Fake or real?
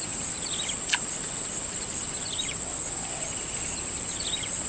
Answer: fake